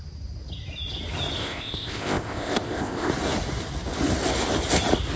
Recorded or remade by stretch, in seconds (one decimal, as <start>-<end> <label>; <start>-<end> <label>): 0.0-1.4 recorded; 1.4-3.1 remade; 3.1-5.2 recorded